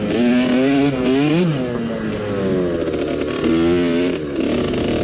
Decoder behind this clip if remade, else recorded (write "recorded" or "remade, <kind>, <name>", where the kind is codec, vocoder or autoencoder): recorded